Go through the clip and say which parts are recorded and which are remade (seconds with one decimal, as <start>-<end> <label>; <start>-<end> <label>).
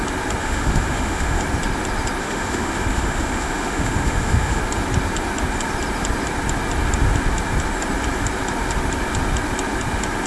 0.0-0.4 recorded; 0.4-1.4 remade; 1.4-2.2 recorded; 2.2-4.6 remade; 4.6-10.3 recorded